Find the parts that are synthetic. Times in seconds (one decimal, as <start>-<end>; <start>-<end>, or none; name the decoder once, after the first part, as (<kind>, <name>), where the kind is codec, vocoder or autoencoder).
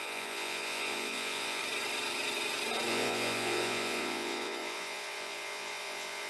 0.0-1.6 (vocoder, Vocos); 2.9-6.3